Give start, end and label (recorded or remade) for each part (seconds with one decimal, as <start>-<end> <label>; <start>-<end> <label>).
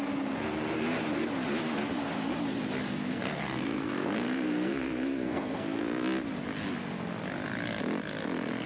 0.0-3.1 recorded; 3.1-5.8 remade; 5.8-8.7 recorded